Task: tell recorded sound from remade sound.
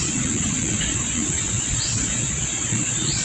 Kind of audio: remade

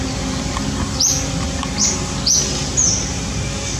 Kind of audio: recorded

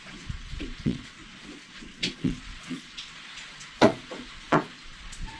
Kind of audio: remade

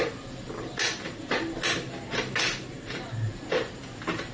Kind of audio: recorded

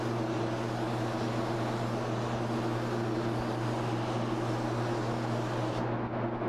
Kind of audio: recorded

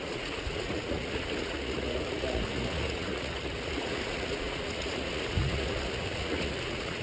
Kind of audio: remade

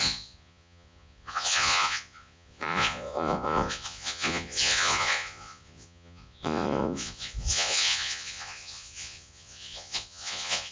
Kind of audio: remade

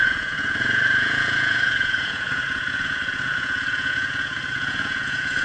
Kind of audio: remade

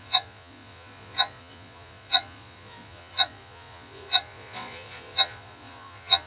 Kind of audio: remade